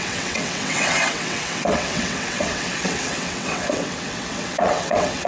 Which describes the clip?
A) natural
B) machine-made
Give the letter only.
B